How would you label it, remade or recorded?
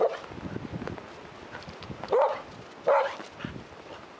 recorded